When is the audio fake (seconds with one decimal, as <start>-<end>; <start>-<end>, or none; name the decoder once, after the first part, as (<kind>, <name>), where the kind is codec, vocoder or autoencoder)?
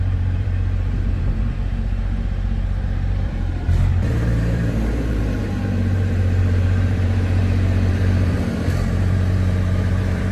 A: 0.0-7.4 (vocoder, BigVGAN v2); 7.9-10.3